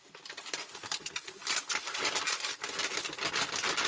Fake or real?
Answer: real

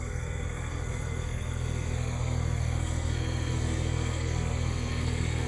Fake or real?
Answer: fake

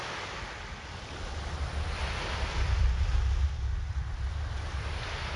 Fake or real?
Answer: real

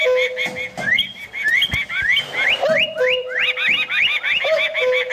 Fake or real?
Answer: real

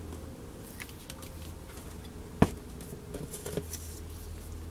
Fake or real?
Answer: real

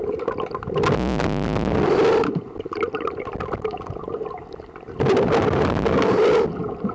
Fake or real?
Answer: real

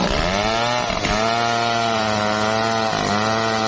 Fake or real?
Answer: real